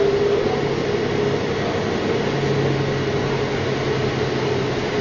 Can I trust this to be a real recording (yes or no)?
yes